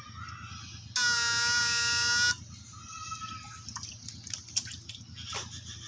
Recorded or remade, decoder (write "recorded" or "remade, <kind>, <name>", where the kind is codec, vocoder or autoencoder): recorded